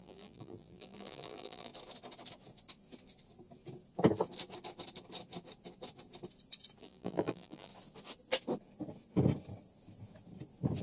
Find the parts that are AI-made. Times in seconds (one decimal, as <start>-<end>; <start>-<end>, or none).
0.0-1.7; 6.8-7.7